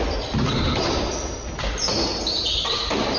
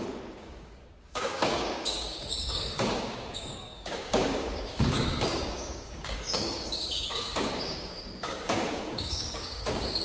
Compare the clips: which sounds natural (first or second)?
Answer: first